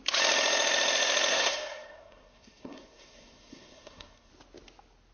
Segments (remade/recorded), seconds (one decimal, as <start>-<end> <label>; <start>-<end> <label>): 0.0-1.3 recorded; 1.3-4.3 remade; 4.3-5.1 recorded